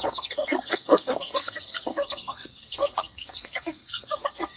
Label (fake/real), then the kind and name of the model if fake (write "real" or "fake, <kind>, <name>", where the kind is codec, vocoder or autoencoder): fake, codec, SNAC